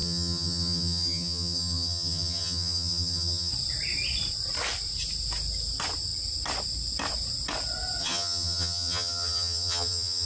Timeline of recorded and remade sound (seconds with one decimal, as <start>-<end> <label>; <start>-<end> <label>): 0.0-3.5 remade; 3.5-8.0 recorded; 8.0-10.3 remade